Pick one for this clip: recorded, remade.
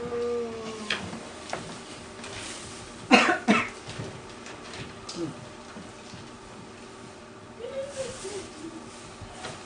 recorded